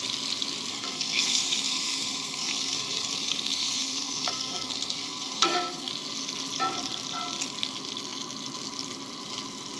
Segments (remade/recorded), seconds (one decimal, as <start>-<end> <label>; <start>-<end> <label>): 0.0-0.7 recorded; 0.7-5.9 remade; 5.9-9.8 recorded

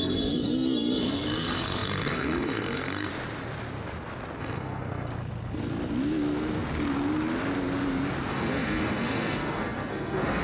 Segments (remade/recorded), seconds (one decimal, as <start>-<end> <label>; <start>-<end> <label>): 0.0-3.1 remade; 3.1-4.4 recorded; 4.4-5.1 remade; 5.1-8.3 recorded; 8.3-10.4 remade

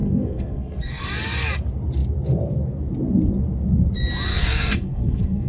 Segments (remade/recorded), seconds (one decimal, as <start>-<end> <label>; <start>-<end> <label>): 0.0-1.1 remade; 1.1-4.3 recorded; 4.3-5.5 remade

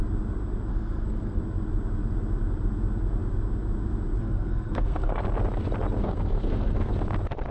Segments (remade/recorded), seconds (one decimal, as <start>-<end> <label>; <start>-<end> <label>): 0.0-0.7 recorded; 0.7-1.4 remade; 1.4-4.2 recorded; 4.2-5.2 remade; 5.2-6.0 recorded; 6.0-6.9 remade; 6.9-7.5 recorded